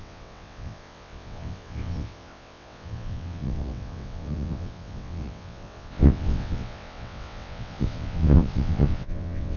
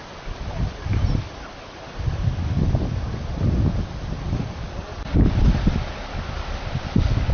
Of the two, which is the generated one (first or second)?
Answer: first